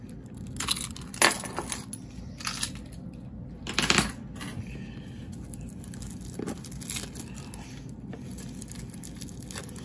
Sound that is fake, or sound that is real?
real